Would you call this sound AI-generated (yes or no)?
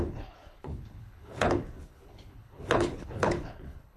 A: yes